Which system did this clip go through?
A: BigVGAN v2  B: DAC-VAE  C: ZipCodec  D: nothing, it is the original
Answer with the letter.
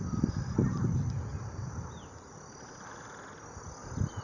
A